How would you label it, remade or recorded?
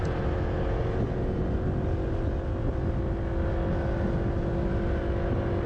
recorded